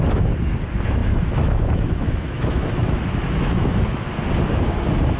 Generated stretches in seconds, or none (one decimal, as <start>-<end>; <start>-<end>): 1.0-4.1